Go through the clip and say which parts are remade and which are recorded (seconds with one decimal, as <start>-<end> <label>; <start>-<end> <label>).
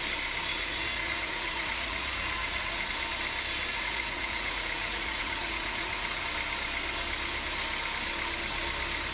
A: 0.0-0.5 recorded; 0.5-2.9 remade; 2.9-3.7 recorded; 3.7-6.2 remade; 6.2-9.1 recorded